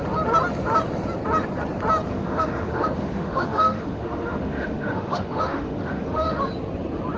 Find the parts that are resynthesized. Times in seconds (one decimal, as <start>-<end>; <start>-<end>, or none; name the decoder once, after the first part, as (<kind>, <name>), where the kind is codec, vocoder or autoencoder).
2.1-6.4 (autoencoder, DAC-VAE)